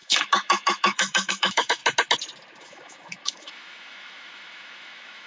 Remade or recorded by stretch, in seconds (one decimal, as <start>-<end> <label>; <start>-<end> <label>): 0.0-1.8 remade; 1.8-2.6 recorded; 2.6-5.3 remade